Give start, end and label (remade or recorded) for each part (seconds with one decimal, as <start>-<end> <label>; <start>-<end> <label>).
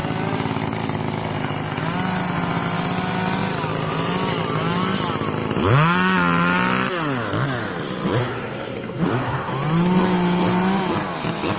0.0-8.2 recorded; 8.2-9.5 remade; 9.5-11.6 recorded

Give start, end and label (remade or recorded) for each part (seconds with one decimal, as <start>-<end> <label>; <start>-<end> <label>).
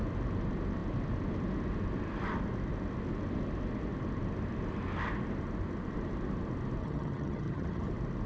0.0-6.8 recorded; 6.8-7.9 remade; 7.9-8.3 recorded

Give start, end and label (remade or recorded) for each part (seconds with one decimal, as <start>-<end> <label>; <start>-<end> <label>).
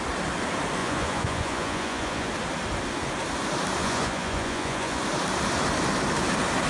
0.0-0.8 recorded; 0.8-2.3 remade; 2.3-3.8 recorded; 3.8-5.0 remade; 5.0-6.7 recorded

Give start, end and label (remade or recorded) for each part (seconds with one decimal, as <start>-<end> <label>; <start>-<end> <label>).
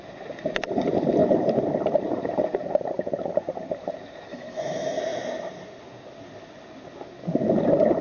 0.0-4.3 recorded; 4.3-5.0 remade; 5.0-8.0 recorded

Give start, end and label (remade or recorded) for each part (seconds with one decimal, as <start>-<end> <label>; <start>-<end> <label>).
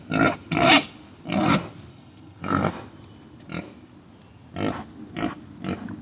0.0-1.9 recorded; 1.9-2.7 remade; 2.7-6.0 recorded